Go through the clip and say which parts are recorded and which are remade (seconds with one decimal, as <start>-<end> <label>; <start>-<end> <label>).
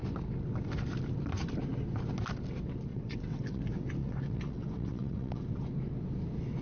0.0-2.9 recorded; 2.9-3.6 remade; 3.6-4.0 recorded; 4.0-5.4 remade; 5.4-6.6 recorded